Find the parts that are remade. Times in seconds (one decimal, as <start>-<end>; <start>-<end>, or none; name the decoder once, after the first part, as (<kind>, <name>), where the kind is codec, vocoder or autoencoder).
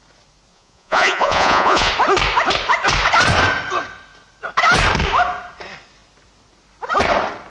0.5-1.9 (vocoder, Vocos)